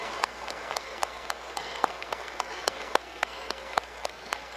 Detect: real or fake fake